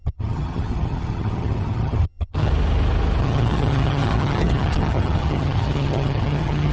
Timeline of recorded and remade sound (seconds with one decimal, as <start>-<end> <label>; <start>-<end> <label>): 0.0-2.5 remade; 2.5-3.2 recorded; 3.2-6.7 remade